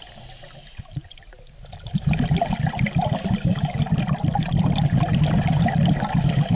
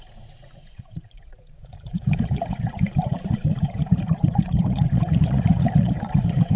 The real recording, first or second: first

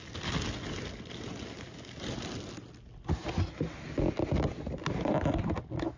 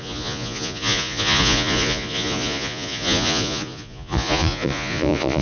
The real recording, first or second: first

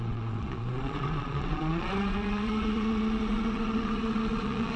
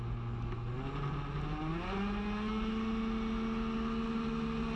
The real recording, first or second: second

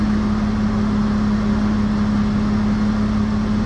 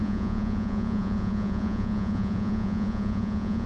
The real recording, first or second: first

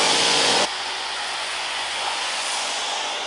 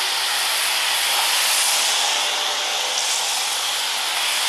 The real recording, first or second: second